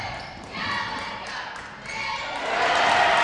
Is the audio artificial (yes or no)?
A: no